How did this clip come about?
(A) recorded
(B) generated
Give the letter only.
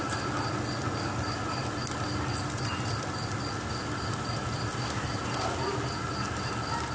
A